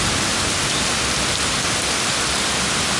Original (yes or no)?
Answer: yes